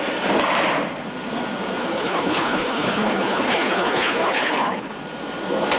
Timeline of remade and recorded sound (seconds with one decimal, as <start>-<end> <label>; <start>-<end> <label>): 0.0-1.8 recorded; 1.8-4.9 remade; 4.9-5.8 recorded